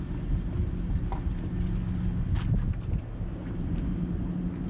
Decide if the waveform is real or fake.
real